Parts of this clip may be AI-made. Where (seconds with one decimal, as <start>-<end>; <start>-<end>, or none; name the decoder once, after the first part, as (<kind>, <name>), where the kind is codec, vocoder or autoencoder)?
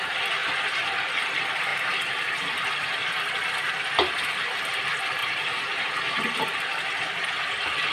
0.4-1.1 (vocoder, BigVGAN v2); 1.7-2.5; 5.2-5.9